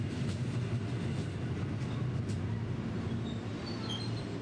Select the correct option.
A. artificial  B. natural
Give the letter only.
B